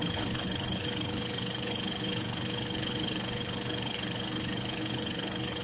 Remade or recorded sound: remade